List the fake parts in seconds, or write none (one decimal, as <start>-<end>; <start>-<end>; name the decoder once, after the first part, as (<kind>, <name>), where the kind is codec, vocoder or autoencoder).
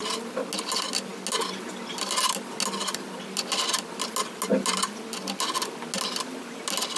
none